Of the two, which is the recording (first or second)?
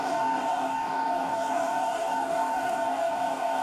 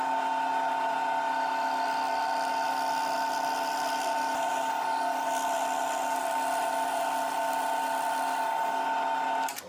second